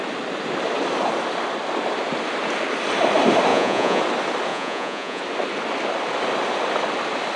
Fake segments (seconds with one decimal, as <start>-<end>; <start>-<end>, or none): 3.5-4.0; 4.5-5.2